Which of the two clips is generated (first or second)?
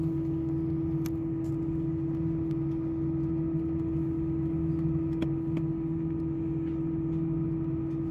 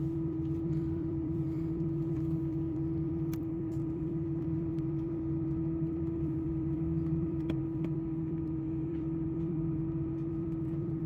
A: second